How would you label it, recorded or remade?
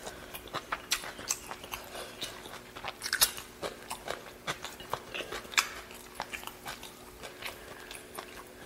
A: recorded